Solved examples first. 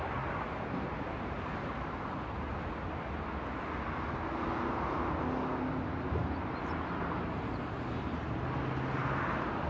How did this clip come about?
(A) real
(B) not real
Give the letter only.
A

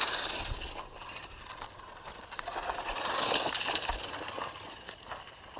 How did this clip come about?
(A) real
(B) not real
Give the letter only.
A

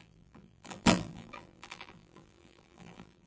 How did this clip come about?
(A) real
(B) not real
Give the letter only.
B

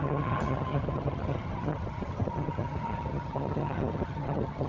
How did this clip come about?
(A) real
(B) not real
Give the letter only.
B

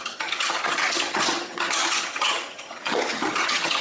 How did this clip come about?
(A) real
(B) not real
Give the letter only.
B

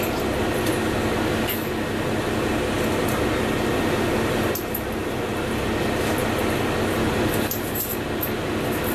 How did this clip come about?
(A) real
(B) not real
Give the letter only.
A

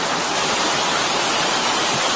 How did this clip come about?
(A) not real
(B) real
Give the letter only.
B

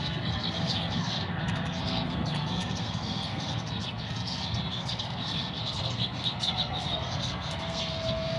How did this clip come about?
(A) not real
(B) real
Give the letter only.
A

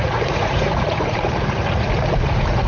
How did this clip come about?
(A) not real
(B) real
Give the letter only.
A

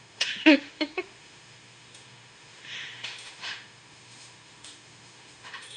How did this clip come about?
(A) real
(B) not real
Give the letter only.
B